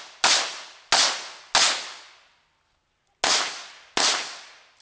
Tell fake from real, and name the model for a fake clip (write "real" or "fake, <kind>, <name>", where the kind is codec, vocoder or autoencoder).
real